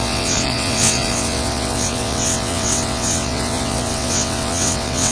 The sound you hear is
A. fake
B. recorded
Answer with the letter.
A